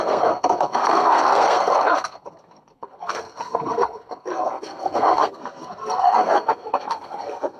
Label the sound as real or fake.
fake